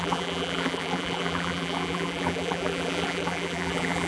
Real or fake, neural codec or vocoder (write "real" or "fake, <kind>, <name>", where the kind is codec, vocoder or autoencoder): fake, vocoder, BigVGAN v2